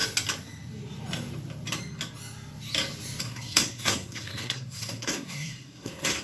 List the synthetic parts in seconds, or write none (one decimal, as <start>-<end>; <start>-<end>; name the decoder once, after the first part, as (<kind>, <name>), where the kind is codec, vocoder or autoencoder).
3.2-6.2 (codec, SNAC)